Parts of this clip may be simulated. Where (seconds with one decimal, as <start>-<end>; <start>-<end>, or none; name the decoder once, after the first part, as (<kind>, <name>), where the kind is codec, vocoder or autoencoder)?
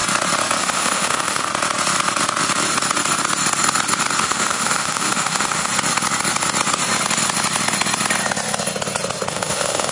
0.6-1.5 (autoencoder, DAC-VAE); 4.2-5.7; 9.3-9.9